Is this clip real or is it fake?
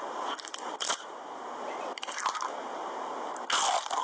real